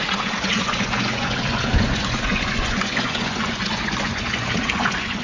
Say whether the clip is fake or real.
fake